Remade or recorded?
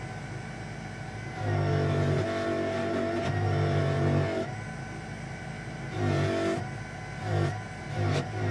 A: recorded